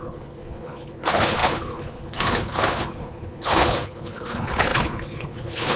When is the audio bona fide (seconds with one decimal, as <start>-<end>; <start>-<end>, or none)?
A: none

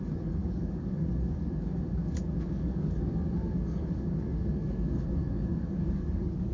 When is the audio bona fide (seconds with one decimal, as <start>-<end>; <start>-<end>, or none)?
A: none

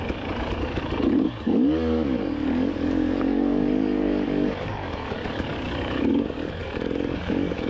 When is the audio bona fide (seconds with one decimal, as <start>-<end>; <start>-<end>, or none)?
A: none

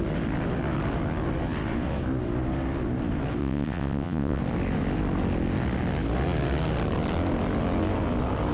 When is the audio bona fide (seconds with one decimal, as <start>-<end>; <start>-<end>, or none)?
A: 0.0-3.4; 4.4-8.5